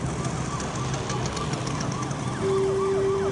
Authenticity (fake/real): real